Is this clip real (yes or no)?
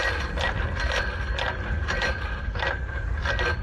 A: no